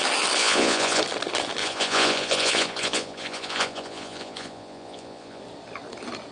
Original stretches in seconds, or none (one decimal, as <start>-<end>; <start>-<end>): 0.0-0.4; 1.0-1.6; 5.4-6.3